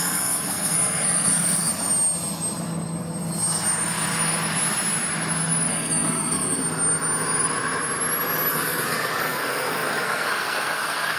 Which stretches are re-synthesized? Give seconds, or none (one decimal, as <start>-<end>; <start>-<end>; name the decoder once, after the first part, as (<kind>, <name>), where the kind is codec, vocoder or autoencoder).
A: 0.0-1.7 (codec, SNAC); 5.7-6.6; 8.5-11.2